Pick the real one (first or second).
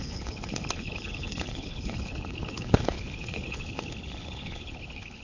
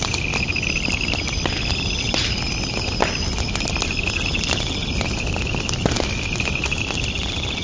second